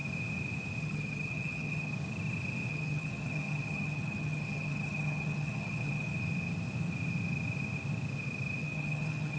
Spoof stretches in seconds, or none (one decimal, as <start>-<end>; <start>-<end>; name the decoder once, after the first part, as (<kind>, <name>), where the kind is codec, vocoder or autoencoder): 0.8-1.9 (vocoder, HiFi-GAN); 2.7-6.1; 8.6-9.4